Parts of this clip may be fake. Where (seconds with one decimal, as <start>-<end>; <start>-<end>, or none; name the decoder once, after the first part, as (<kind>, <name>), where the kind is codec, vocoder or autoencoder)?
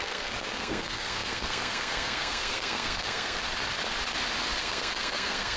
0.0-3.4 (codec, SNAC); 4.6-5.6